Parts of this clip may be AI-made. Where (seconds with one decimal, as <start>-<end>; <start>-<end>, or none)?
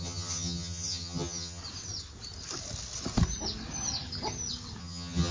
0.0-1.6; 4.8-5.3